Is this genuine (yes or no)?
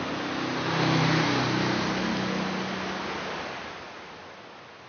yes